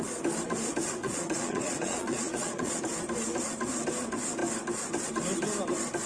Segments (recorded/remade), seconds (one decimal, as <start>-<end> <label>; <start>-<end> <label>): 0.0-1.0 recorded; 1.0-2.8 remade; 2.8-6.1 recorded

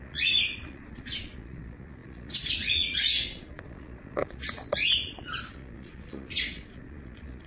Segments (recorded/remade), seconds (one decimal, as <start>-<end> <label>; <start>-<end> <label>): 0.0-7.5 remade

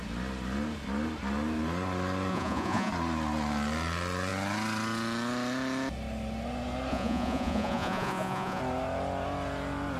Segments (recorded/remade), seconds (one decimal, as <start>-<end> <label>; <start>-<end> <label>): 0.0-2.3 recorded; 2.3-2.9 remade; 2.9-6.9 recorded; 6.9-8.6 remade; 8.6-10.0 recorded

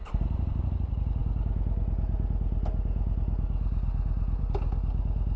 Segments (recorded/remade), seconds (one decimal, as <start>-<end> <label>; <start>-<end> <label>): 0.0-5.4 recorded

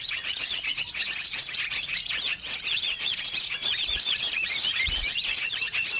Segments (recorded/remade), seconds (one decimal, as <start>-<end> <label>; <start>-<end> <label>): 0.0-6.0 remade